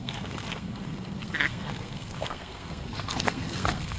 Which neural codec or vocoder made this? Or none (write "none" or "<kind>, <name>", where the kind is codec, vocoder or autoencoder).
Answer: codec, SNAC